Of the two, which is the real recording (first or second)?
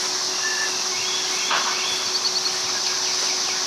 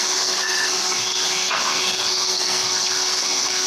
first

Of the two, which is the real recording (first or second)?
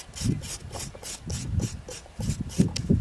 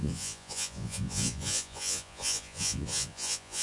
first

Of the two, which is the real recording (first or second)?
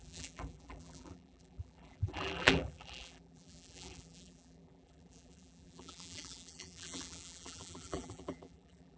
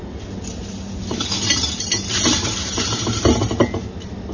second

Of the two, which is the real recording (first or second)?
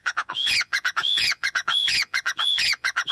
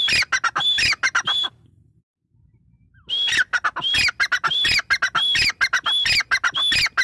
second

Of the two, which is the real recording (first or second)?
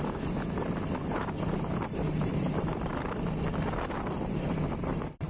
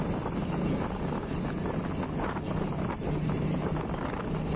second